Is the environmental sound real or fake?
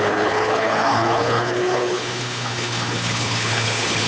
fake